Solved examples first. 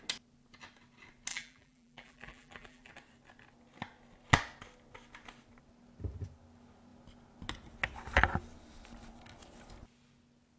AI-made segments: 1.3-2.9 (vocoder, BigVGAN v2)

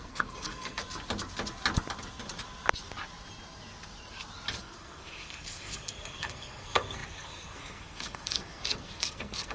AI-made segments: 0.0-0.8 (codec, SNAC); 4.6-9.5